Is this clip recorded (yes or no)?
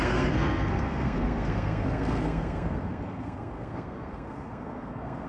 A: no